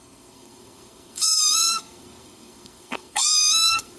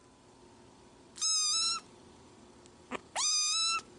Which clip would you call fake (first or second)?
first